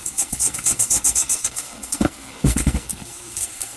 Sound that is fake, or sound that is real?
fake